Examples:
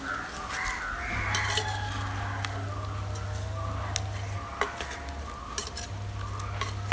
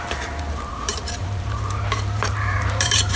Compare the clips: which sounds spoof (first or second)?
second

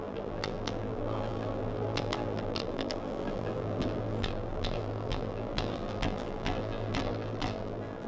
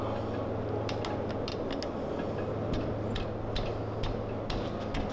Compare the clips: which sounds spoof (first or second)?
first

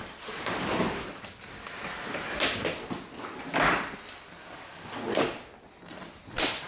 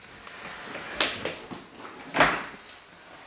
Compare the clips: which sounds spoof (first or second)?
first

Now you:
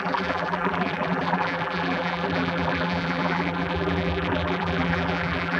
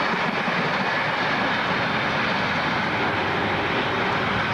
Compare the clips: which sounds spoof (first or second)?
first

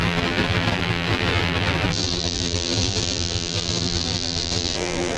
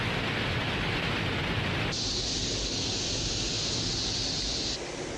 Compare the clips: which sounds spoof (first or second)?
first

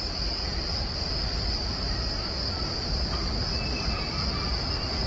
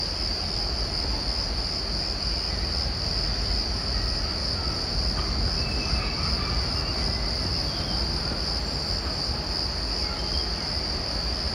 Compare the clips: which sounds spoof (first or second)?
first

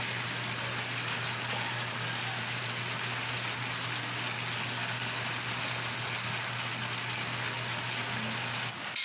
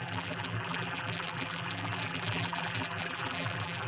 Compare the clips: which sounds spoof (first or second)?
second